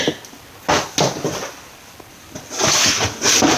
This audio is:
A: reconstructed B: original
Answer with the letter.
B